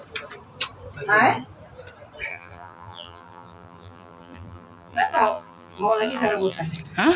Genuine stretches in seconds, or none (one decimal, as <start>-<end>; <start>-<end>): 0.0-2.3; 6.6-7.2